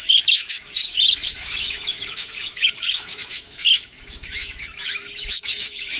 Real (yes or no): no